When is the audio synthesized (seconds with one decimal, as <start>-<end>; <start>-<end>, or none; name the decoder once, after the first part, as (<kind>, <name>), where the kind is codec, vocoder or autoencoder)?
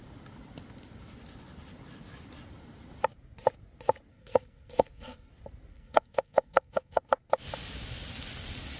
4.1-5.3 (codec, SNAC); 5.7-7.0